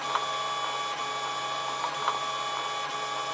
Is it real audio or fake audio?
real